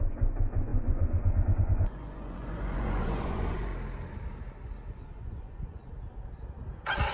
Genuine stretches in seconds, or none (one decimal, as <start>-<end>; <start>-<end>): 3.7-4.9; 5.8-7.1